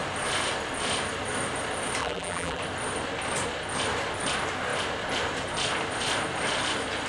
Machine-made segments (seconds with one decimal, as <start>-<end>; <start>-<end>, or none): 2.0-2.6